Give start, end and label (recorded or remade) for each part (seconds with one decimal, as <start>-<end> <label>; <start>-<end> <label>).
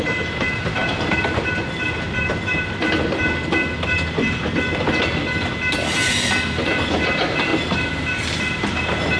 0.0-9.2 recorded